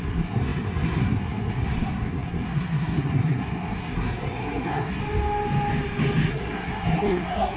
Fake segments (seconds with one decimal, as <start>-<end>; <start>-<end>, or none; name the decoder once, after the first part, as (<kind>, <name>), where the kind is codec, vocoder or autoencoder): 0.0-5.0 (codec, SNAC); 6.3-7.6